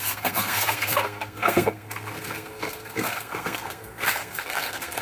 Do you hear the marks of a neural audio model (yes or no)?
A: yes